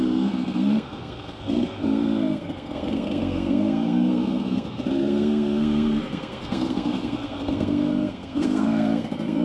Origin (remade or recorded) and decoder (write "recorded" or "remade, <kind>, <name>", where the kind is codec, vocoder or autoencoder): remade, codec, SNAC